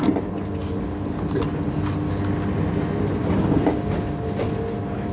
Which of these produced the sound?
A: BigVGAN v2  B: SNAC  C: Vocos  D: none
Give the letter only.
D